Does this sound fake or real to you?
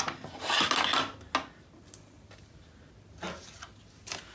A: real